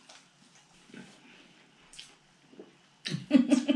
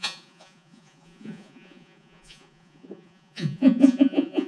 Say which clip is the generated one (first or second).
second